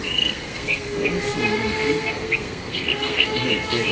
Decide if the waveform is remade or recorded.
remade